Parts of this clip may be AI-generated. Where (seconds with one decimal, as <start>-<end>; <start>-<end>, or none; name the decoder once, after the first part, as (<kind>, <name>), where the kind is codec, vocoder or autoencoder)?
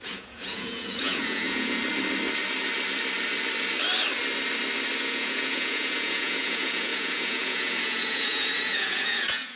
0.0-1.8 (vocoder, Vocos); 5.0-9.6